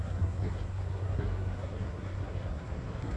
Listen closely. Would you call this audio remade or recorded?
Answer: remade